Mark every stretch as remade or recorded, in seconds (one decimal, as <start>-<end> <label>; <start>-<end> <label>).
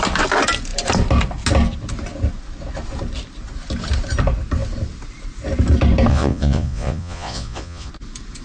0.0-6.1 recorded; 6.1-7.9 remade; 7.9-8.4 recorded